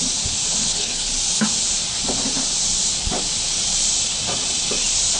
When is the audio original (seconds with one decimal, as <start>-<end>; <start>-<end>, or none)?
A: 0.0-0.6; 1.1-5.2